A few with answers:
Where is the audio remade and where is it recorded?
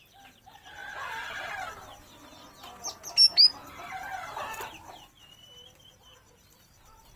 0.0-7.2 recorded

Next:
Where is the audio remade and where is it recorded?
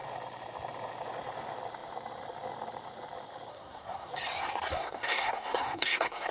0.0-3.5 recorded; 3.5-4.1 remade; 4.1-4.7 recorded; 4.7-6.3 remade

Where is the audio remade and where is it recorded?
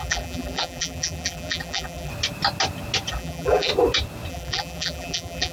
0.0-2.1 remade; 2.1-3.1 recorded; 3.1-3.7 remade; 3.7-4.3 recorded; 4.3-5.5 remade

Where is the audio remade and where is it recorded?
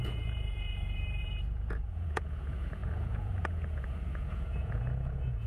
0.0-5.5 remade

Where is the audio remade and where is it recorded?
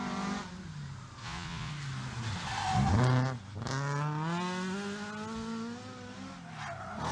0.0-1.2 recorded; 1.2-1.7 remade; 1.7-7.1 recorded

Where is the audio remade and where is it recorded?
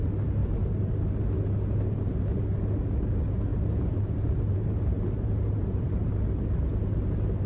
0.0-0.4 recorded; 0.4-1.0 remade; 1.0-3.5 recorded; 3.5-6.1 remade; 6.1-7.5 recorded